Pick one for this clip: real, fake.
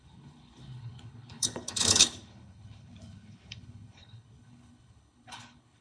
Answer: fake